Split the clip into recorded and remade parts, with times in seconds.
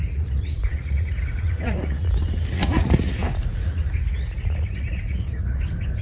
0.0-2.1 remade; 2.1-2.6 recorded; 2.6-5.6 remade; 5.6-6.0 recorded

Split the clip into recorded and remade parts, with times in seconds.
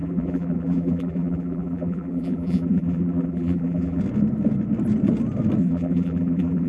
0.0-4.0 remade; 4.0-5.6 recorded; 5.6-6.7 remade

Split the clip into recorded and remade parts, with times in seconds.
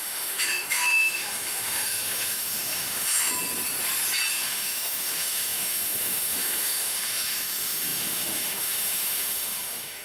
0.0-3.3 remade; 3.3-4.3 recorded; 4.3-10.0 remade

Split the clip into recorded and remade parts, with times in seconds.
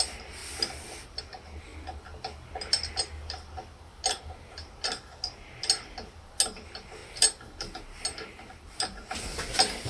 0.0-9.9 recorded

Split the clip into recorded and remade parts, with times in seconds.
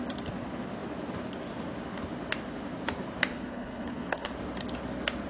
0.0-3.3 recorded; 3.3-4.3 remade; 4.3-5.3 recorded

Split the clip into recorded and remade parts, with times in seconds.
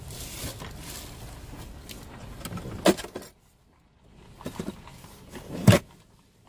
0.0-0.5 remade; 0.5-2.6 recorded; 2.6-4.9 remade; 4.9-5.4 recorded; 5.4-6.5 remade